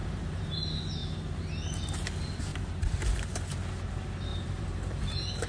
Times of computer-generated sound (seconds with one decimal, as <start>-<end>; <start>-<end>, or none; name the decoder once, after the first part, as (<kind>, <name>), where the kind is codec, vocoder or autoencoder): 0.0-0.6 (vocoder, BigVGAN v2); 2.5-3.4; 4.3-5.5